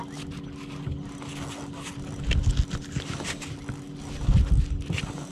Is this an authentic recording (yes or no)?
yes